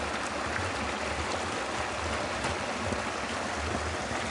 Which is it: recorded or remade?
recorded